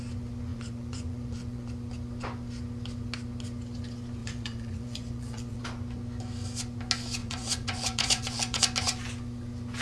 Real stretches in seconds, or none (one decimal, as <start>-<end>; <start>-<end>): 0.0-0.5; 1.7-4.2; 5.6-7.2; 8.6-9.8